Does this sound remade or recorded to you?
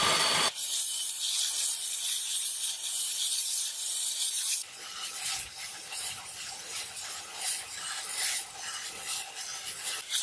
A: remade